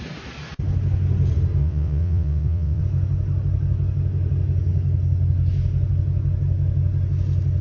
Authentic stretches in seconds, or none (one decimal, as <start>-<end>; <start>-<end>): 0.0-1.6; 2.8-7.6